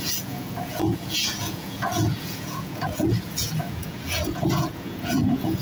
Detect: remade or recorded remade